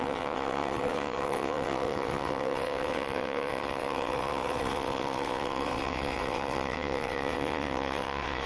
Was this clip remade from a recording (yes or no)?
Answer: yes